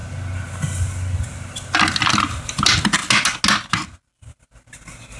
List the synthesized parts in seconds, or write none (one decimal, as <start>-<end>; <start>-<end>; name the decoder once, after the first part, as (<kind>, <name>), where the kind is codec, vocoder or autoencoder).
none